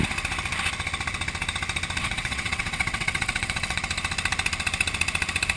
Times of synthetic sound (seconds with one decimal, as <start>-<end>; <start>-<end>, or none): 2.0-3.8